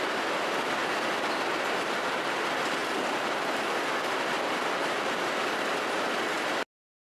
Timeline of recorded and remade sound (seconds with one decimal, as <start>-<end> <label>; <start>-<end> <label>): 0.0-7.0 recorded